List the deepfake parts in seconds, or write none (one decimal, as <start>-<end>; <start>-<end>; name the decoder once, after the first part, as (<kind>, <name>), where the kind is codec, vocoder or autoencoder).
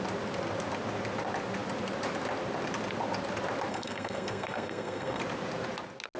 3.7-5.2 (codec, SNAC)